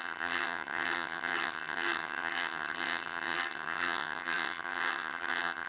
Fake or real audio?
fake